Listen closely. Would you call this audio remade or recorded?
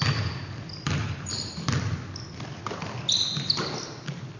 recorded